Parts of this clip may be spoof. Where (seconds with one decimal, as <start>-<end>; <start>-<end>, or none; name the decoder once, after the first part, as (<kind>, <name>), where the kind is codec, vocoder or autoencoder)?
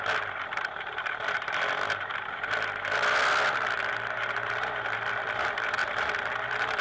none